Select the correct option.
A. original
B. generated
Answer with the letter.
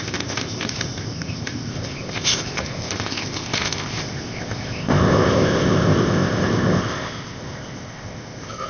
B